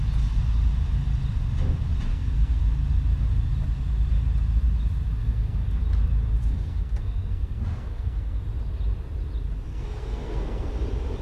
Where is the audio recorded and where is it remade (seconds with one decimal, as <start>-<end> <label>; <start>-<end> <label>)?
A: 0.0-2.1 recorded; 2.1-2.6 remade; 2.6-5.2 recorded; 5.2-5.8 remade; 5.8-6.4 recorded; 6.4-8.4 remade; 8.4-9.7 recorded; 9.7-10.7 remade; 10.7-11.2 recorded